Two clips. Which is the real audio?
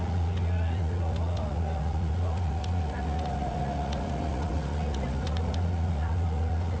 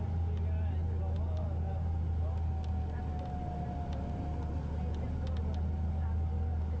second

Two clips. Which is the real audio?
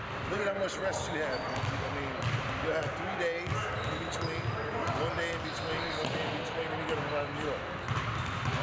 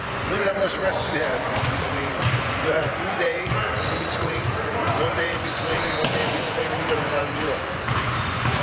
first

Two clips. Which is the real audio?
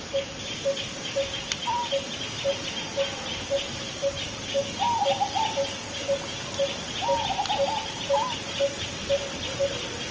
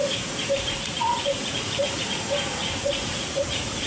first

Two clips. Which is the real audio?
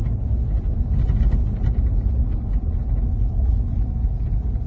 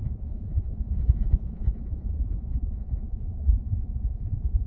first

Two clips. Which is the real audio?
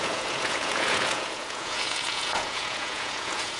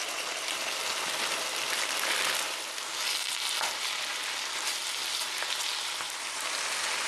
second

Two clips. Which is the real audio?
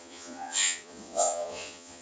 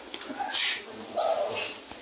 second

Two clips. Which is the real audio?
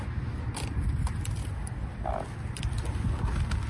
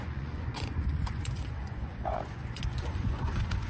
first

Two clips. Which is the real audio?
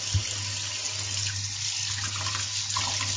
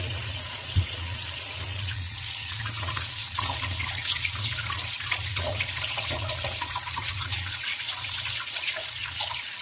first